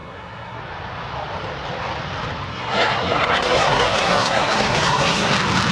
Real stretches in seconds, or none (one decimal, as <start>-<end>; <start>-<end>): 0.6-2.5; 5.3-5.7